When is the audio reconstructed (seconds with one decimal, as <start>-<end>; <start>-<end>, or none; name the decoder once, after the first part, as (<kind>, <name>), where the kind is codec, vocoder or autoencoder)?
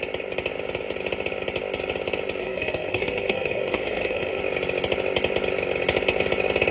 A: 2.4-4.4 (codec, SNAC)